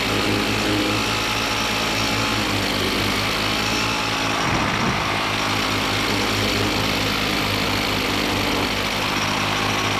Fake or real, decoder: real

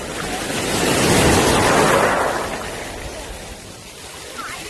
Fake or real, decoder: real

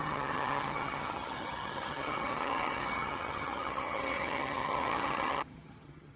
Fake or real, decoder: fake, vocoder, HiFi-GAN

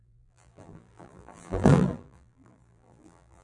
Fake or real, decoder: fake, vocoder, BigVGAN v2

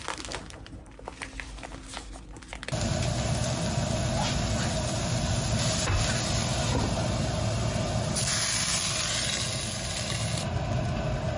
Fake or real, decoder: real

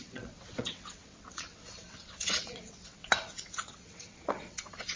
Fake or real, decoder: fake, vocoder, WaveNeXt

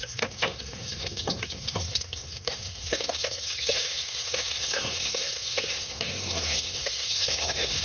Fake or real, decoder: fake, codec, SNAC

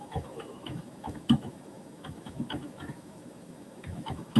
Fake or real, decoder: fake, autoencoder, DAC-VAE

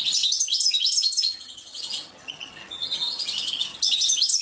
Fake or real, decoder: fake, vocoder, HiFi-GAN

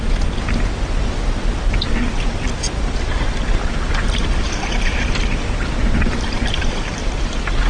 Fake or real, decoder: real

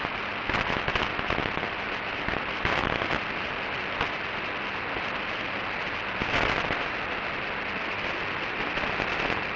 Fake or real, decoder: real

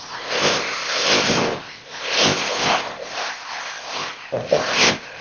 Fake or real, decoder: fake, codec, ZipCodec